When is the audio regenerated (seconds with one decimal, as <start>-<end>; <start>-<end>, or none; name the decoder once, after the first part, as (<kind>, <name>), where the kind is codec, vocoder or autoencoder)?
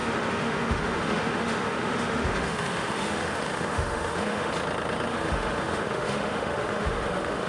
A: 0.0-4.5 (autoencoder, DAC-VAE); 5.1-7.5